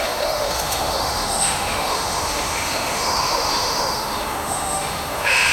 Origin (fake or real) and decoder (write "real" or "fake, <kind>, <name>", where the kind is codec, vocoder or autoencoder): fake, autoencoder, DAC-VAE